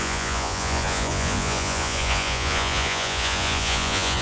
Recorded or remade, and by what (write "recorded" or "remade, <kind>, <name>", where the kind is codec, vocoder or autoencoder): remade, vocoder, Vocos